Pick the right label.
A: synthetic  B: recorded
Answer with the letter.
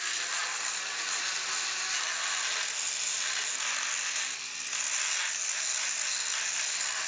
B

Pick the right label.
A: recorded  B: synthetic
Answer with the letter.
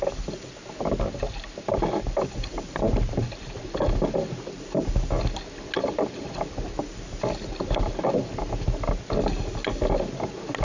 A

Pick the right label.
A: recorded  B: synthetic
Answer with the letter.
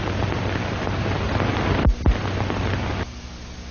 A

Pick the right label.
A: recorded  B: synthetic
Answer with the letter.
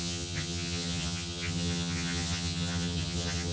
B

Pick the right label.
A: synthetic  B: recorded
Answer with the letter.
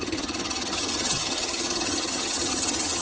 A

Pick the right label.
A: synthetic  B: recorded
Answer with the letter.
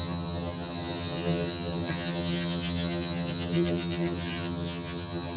A